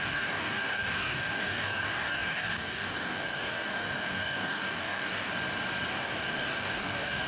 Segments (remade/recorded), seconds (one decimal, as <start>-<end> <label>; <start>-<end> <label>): 0.0-5.3 remade; 5.3-5.9 recorded; 5.9-7.3 remade